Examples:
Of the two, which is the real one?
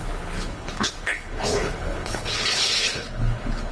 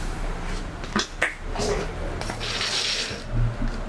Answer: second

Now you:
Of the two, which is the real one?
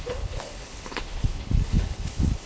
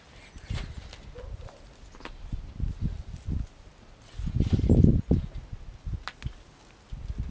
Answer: second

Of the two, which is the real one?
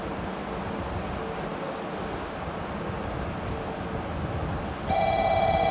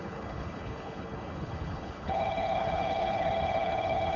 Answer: first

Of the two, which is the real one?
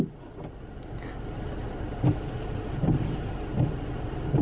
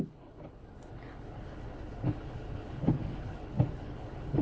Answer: first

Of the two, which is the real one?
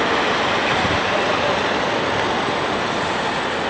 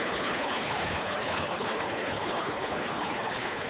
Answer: first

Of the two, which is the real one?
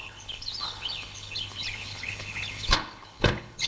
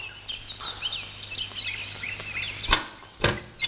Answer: second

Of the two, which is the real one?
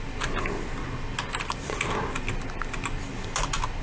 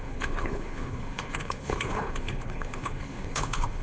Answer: first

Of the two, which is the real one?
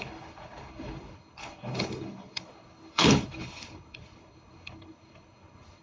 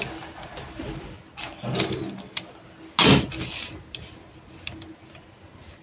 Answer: second